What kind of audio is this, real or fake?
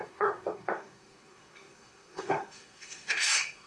fake